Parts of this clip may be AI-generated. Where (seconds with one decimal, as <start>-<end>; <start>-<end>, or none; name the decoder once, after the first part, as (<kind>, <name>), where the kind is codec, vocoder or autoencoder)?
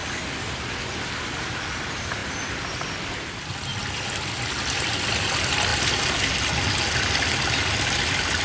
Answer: 5.7-6.3 (vocoder, BigVGAN v2)